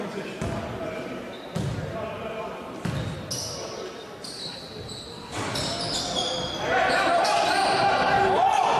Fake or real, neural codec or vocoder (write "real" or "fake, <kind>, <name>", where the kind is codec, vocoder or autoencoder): real